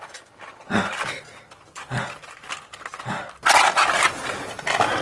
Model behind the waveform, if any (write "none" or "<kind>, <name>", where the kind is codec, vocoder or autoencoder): none